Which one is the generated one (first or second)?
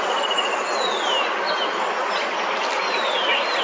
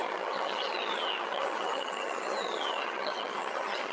second